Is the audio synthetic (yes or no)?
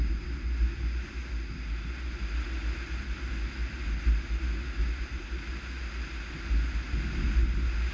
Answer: no